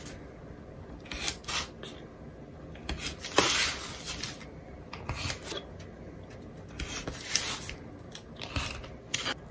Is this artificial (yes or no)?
no